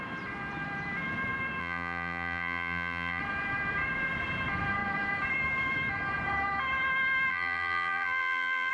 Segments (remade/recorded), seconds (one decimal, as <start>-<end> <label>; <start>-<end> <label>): 0.0-1.6 recorded; 1.6-3.2 remade; 3.2-7.3 recorded; 7.3-8.7 remade